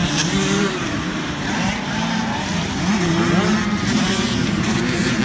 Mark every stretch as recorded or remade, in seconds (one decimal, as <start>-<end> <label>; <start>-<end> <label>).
0.0-3.1 remade; 3.1-3.8 recorded; 3.8-5.2 remade